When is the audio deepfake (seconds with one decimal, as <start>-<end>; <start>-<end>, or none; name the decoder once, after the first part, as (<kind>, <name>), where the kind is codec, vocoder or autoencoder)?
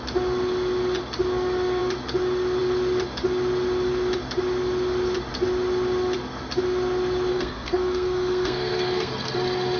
7.3-9.1 (codec, SNAC)